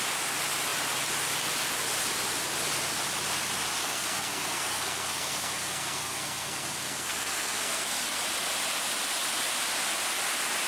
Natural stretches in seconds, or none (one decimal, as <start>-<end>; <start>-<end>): 0.0-3.8; 8.2-10.7